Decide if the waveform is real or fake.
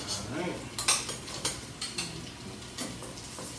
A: real